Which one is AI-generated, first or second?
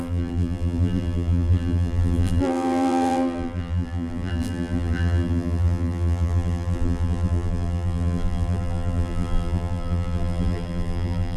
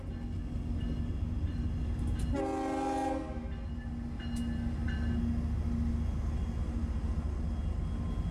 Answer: first